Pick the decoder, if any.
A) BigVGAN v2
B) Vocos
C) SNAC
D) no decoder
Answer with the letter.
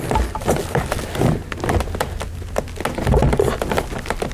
D